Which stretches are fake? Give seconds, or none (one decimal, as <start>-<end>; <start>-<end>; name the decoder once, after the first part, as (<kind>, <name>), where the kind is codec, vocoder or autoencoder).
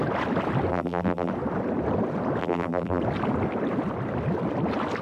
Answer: 0.7-1.3 (vocoder, BigVGAN v2); 2.4-3.0